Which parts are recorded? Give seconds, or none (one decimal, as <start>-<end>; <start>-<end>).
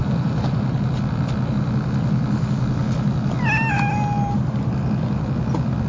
0.8-5.9